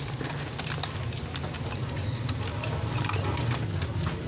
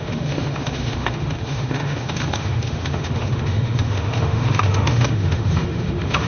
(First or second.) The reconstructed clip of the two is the second